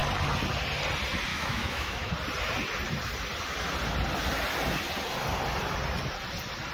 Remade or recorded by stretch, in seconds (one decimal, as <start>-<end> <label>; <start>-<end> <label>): 0.0-1.3 recorded; 1.3-2.1 remade; 2.1-6.7 recorded

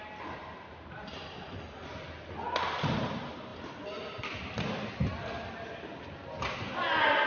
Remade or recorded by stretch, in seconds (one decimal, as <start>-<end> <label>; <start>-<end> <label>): 0.0-7.3 recorded

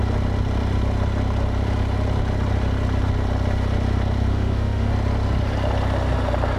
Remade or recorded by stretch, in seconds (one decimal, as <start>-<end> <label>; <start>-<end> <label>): 0.0-4.3 recorded; 4.3-4.9 remade; 4.9-6.6 recorded

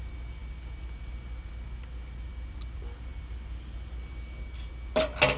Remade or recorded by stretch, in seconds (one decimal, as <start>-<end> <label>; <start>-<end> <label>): 0.0-5.4 recorded

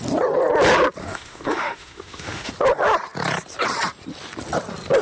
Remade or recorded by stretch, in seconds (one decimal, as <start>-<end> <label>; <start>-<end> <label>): 0.0-1.0 recorded; 1.0-2.5 remade; 2.5-5.0 recorded

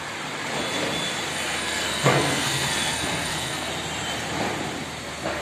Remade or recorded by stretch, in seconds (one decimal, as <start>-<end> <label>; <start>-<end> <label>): 0.0-1.3 recorded; 1.3-3.7 remade; 3.7-5.4 recorded

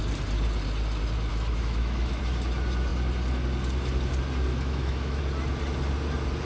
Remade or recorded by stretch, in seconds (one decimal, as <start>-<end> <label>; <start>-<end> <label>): 0.0-1.3 recorded; 1.3-2.2 remade; 2.2-4.5 recorded; 4.5-5.2 remade; 5.2-6.4 recorded

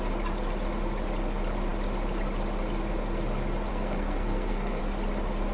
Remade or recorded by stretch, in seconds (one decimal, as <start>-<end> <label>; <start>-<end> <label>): 0.0-3.7 recorded; 3.7-4.8 remade; 4.8-5.5 recorded